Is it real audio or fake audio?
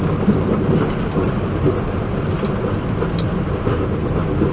real